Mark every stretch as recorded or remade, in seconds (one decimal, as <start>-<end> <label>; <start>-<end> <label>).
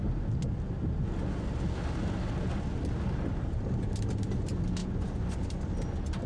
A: 0.0-4.8 recorded; 4.8-5.4 remade; 5.4-6.3 recorded